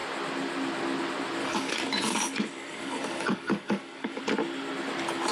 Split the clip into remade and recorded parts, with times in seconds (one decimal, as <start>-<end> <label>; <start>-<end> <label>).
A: 0.0-1.4 recorded; 1.4-4.2 remade; 4.2-5.3 recorded